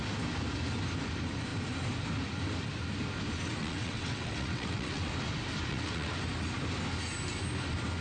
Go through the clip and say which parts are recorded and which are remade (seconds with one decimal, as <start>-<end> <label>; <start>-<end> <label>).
0.0-3.6 recorded; 3.6-5.1 remade; 5.1-5.7 recorded; 5.7-6.2 remade; 6.2-8.0 recorded